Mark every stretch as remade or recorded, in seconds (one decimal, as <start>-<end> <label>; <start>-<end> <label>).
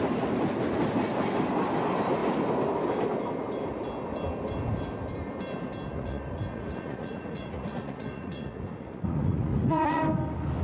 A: 0.0-5.9 recorded; 5.9-10.0 remade; 10.0-10.6 recorded